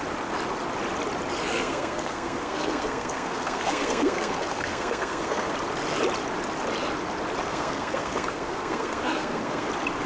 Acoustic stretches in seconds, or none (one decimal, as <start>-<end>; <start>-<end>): 0.0-1.5; 5.5-7.5; 9.7-10.1